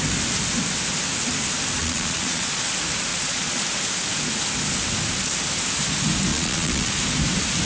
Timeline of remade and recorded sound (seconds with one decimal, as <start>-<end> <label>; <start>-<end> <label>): 0.0-1.8 recorded; 1.8-2.7 remade; 2.7-3.1 recorded; 3.1-3.6 remade; 3.6-6.3 recorded; 6.3-6.9 remade; 6.9-7.6 recorded